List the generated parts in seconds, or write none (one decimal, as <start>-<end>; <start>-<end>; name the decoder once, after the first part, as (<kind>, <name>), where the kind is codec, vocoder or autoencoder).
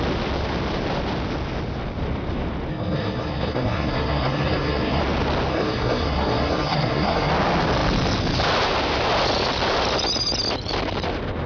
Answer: 2.7-5.0 (codec, SNAC); 5.5-7.3